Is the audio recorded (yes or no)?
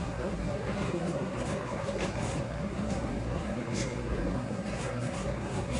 no